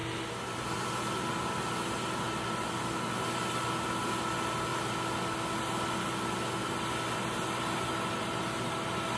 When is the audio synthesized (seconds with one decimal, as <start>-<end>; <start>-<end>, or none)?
none